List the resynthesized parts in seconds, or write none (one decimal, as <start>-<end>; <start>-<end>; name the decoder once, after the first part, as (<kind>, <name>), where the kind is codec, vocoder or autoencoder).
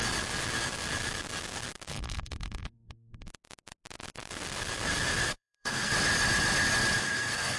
1.9-3.3 (codec, SNAC); 5.3-5.9; 7.0-7.6